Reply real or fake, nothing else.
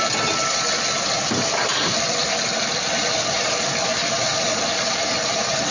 real